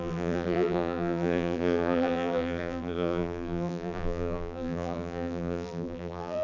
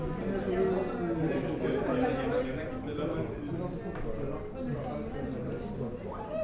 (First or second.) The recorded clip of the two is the second